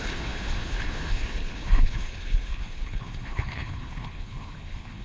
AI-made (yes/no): yes